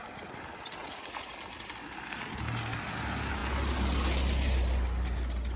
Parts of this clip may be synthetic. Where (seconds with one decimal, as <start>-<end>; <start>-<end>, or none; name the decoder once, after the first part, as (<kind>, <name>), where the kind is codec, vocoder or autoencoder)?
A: 0.8-1.3 (vocoder, Vocos)